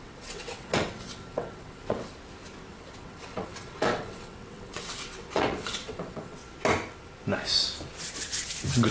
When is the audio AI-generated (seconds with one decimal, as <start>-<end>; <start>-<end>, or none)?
0.0-2.1; 2.7-6.4